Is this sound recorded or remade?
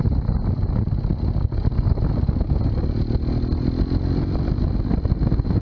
recorded